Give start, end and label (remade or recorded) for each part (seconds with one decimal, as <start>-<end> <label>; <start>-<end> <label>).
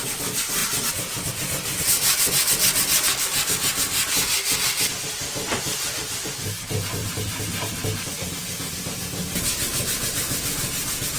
0.0-7.0 recorded; 7.0-7.8 remade; 7.8-8.4 recorded; 8.4-9.0 remade; 9.0-11.2 recorded